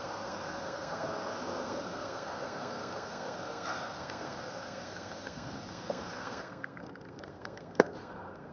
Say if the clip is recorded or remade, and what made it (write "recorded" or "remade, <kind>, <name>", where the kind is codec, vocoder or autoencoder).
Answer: remade, codec, SNAC